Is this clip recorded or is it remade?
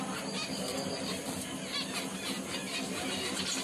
recorded